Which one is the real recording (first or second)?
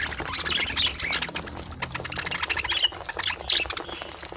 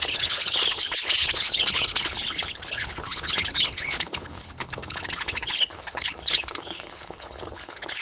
first